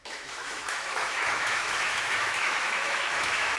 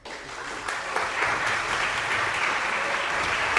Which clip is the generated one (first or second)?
first